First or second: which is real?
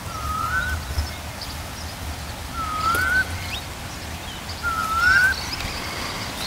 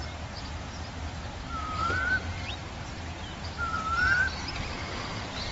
first